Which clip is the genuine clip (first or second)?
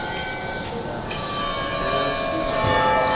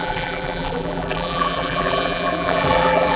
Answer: first